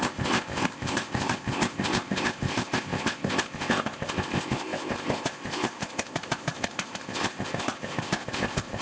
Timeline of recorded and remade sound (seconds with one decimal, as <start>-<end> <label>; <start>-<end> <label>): 0.0-8.8 remade